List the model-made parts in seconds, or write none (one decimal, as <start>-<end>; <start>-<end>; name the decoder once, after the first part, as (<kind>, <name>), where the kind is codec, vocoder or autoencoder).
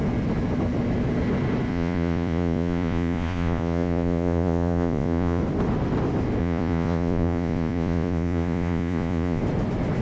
1.7-5.4 (vocoder, Vocos); 6.4-9.4